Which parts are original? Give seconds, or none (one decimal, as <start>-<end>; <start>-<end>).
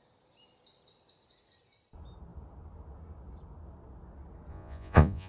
0.0-4.5